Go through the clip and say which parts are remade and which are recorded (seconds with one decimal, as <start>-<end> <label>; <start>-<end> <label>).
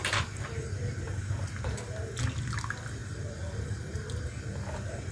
0.0-5.1 recorded